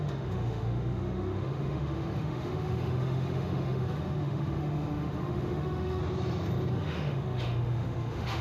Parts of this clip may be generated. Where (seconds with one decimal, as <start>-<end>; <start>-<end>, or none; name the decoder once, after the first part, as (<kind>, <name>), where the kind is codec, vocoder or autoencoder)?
0.0-6.0 (autoencoder, DAC-VAE); 6.7-8.4